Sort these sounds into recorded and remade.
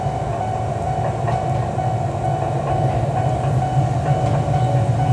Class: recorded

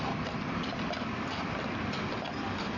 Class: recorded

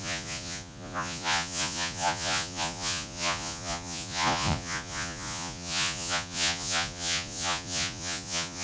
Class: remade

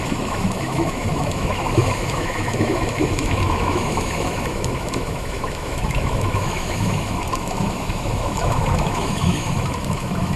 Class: remade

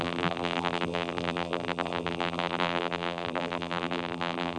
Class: remade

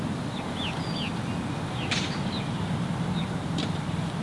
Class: recorded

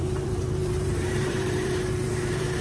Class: remade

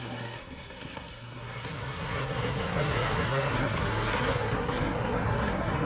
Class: remade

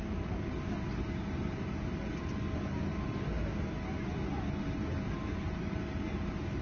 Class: recorded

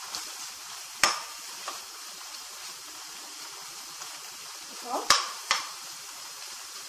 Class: remade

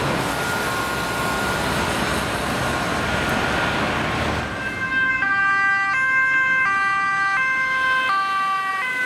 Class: recorded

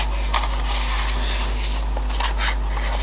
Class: recorded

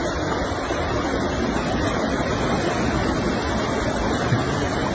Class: recorded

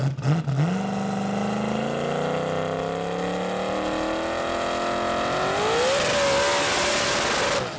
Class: recorded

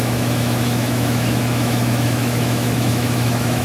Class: remade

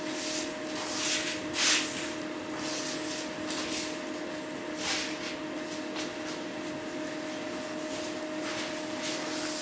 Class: recorded